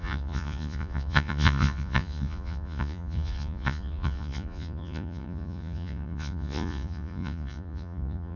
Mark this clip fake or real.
fake